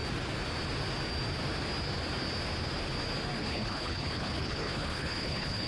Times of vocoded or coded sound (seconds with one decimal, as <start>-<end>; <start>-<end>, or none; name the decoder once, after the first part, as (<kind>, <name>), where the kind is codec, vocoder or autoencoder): 3.4-5.7 (codec, HILCodec)